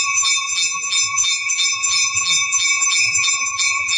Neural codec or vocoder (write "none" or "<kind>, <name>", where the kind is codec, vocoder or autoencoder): vocoder, BigVGAN v2